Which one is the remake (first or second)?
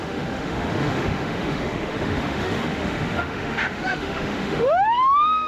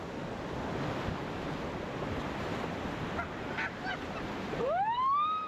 first